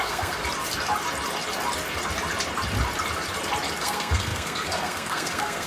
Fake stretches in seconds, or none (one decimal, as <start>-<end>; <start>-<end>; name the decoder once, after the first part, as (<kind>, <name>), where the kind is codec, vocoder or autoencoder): 0.0-0.4 (codec, SNAC); 3.8-5.7